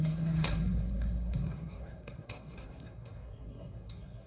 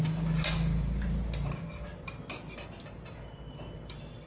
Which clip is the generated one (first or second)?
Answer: first